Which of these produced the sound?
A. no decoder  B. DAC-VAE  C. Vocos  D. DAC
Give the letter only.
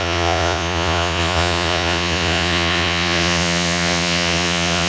C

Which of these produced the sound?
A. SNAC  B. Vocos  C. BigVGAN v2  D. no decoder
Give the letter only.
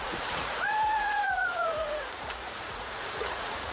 B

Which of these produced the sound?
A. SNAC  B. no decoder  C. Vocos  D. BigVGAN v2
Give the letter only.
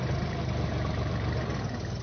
B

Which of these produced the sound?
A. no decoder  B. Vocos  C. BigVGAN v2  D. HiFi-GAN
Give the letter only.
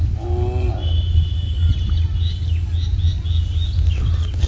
A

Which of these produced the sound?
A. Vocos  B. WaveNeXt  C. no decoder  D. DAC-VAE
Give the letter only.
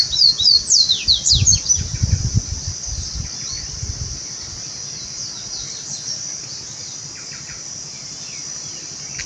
C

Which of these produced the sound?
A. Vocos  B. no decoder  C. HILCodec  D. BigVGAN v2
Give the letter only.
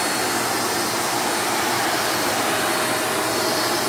B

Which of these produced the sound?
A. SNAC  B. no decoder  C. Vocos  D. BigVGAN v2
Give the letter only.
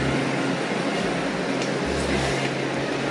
B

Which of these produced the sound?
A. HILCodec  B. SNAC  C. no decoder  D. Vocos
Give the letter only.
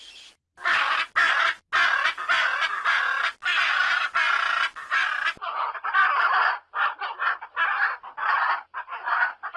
C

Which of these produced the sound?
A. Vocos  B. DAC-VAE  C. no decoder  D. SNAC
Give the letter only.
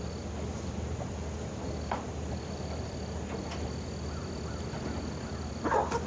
C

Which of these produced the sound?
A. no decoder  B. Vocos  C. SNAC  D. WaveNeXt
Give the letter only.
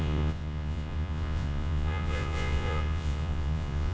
B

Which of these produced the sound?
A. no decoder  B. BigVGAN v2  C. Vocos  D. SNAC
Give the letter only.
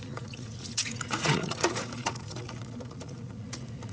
C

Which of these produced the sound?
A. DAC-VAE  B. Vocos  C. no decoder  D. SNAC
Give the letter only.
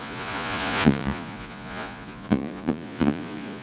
B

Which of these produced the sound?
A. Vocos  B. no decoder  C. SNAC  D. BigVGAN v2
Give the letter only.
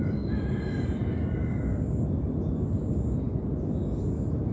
B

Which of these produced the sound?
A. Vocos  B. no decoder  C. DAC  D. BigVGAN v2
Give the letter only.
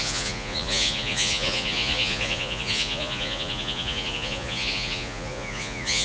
A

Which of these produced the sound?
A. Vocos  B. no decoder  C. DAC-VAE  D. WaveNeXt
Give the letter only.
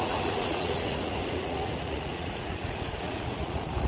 A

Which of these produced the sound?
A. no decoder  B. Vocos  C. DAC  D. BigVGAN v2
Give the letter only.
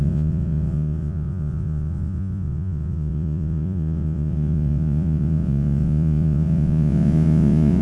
B